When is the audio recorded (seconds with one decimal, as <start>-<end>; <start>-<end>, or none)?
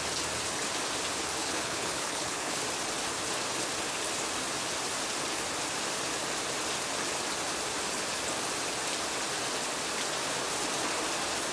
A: 0.0-1.4; 2.6-11.5